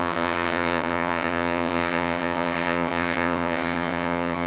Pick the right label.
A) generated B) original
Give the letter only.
A